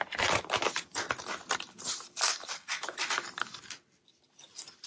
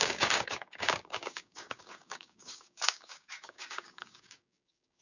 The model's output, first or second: second